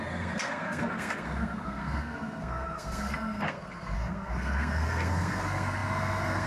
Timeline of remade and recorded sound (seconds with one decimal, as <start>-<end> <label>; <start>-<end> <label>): 0.0-6.5 remade